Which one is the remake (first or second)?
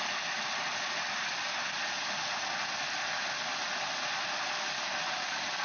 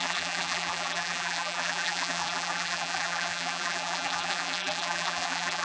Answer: second